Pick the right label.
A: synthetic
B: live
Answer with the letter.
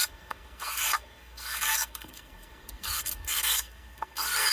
A